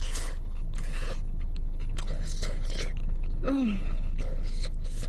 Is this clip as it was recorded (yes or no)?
no